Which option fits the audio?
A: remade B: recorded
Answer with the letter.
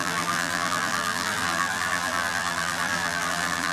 A